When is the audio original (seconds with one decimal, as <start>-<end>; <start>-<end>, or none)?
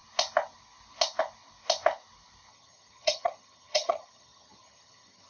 0.0-2.5